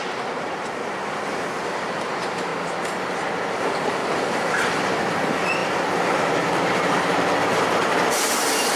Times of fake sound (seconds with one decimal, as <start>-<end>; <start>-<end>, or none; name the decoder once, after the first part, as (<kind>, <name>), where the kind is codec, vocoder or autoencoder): 0.0-2.5 (vocoder, BigVGAN v2); 3.5-8.8